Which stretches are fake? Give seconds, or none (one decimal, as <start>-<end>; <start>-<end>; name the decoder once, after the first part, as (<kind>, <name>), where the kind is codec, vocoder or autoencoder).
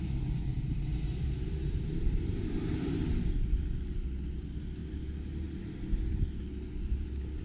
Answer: 0.5-3.2 (vocoder, BigVGAN v2)